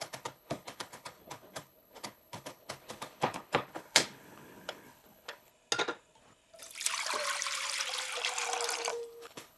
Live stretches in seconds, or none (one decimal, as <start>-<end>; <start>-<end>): 5.5-8.9